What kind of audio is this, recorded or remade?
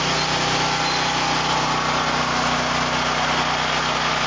recorded